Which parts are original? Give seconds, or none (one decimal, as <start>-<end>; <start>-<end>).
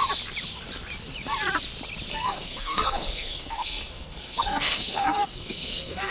0.0-2.1